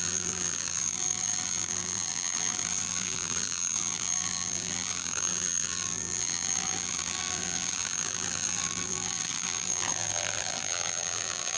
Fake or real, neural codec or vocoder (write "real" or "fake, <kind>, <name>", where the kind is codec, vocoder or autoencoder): fake, vocoder, BigVGAN v2